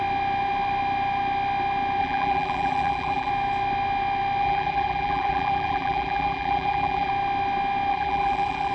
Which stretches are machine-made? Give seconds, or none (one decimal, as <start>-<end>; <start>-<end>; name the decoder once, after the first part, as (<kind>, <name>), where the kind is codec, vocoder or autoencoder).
2.0-3.3 (vocoder, BigVGAN v2); 4.4-7.1; 7.9-8.7